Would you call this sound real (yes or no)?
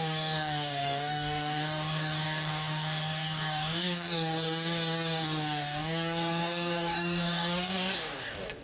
no